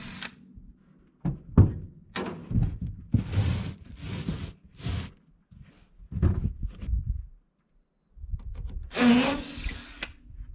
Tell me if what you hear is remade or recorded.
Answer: recorded